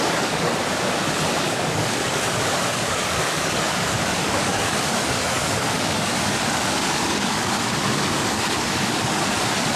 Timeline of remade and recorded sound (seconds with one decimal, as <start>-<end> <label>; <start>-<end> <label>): 0.0-0.5 remade; 0.5-1.4 recorded; 1.4-9.8 remade